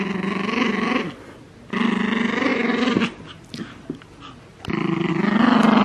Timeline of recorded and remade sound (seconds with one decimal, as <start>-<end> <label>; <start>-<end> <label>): 0.0-5.8 recorded